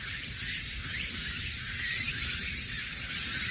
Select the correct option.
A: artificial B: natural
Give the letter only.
B